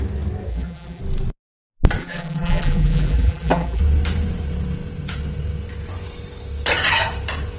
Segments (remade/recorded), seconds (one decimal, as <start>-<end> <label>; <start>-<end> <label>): 0.0-0.5 recorded; 0.5-1.0 remade; 1.0-2.0 recorded; 2.0-3.8 remade; 3.8-7.6 recorded